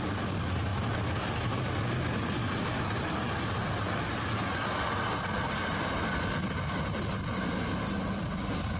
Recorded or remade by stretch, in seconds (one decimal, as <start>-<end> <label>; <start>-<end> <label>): 0.0-8.8 recorded